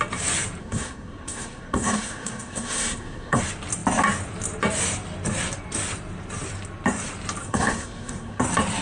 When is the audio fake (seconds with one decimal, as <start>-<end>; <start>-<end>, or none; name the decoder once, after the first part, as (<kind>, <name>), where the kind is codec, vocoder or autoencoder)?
0.6-3.4 (codec, SNAC); 7.4-8.4